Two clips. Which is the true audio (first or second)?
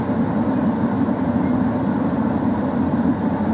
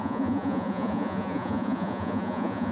first